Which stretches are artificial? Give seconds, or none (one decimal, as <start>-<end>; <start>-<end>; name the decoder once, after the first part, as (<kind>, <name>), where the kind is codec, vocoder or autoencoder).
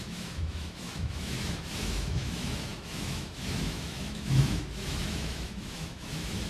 0.0-6.5 (autoencoder, DAC-VAE)